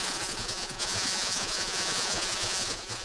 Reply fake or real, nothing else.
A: fake